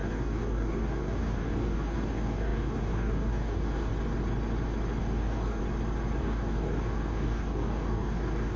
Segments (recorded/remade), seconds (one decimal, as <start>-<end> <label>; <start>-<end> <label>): 0.0-3.9 remade; 3.9-5.0 recorded; 5.0-5.6 remade; 5.6-6.2 recorded; 6.2-8.6 remade